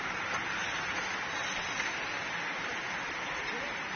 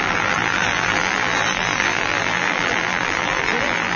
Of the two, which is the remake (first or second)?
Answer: second